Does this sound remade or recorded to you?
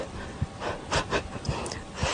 recorded